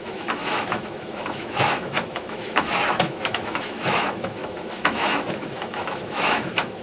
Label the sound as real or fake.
fake